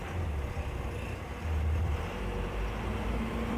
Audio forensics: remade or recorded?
remade